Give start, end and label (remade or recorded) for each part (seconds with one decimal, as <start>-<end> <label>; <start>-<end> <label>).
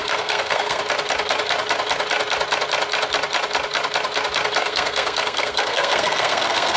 0.0-0.8 remade; 0.8-4.6 recorded; 4.6-6.8 remade